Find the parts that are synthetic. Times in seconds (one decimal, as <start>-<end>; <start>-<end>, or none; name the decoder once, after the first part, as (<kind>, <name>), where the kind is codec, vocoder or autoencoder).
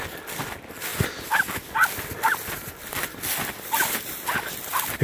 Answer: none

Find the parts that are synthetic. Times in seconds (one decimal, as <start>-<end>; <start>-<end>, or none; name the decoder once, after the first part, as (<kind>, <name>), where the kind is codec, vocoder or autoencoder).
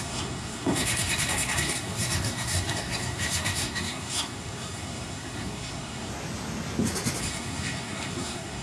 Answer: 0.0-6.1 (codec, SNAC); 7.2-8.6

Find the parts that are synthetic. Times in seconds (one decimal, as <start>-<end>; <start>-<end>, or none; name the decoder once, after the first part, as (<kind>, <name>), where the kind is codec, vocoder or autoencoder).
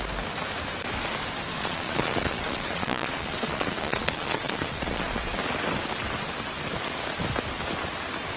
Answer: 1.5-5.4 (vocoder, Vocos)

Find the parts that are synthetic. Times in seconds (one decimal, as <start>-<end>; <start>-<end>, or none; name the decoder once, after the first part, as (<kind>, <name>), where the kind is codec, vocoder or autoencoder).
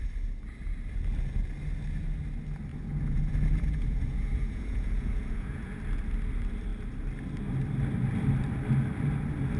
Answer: 2.7-5.8 (vocoder, Vocos)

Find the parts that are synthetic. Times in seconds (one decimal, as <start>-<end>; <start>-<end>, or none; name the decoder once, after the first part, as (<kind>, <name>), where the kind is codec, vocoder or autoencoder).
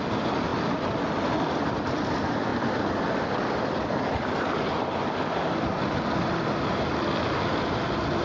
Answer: none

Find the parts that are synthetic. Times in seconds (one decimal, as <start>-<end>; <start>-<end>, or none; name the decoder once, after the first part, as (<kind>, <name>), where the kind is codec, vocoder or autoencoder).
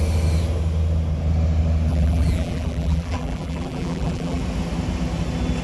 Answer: 1.9-4.4 (vocoder, BigVGAN v2)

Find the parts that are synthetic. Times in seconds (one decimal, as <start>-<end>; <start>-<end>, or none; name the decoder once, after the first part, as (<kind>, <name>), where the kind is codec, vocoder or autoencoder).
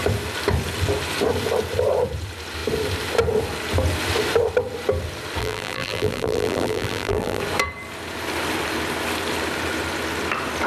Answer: 5.4-7.4 (vocoder, BigVGAN v2)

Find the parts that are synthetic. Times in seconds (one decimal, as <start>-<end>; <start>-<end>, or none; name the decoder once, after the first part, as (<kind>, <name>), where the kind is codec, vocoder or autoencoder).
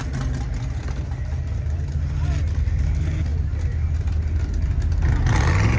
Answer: none